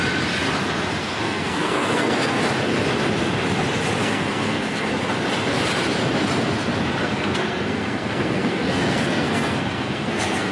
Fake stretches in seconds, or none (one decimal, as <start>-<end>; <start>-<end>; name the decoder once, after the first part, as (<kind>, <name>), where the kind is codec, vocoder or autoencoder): 1.0-2.4 (codec, SNAC); 4.0-4.9; 7.0-10.5